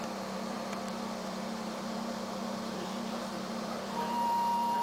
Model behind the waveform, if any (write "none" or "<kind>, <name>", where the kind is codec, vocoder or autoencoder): vocoder, BigVGAN v2